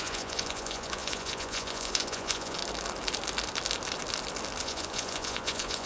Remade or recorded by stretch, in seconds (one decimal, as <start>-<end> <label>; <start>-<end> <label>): 0.0-2.6 remade; 2.6-4.6 recorded; 4.6-5.9 remade